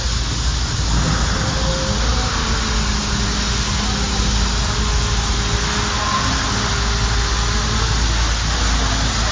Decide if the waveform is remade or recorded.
recorded